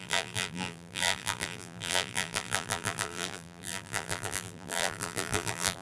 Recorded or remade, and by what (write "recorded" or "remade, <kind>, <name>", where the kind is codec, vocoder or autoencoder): remade, vocoder, BigVGAN v2